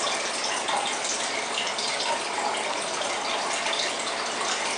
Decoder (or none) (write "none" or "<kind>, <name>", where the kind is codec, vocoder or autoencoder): none